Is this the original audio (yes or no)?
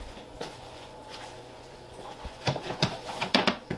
no